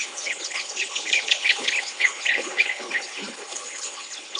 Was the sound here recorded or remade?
remade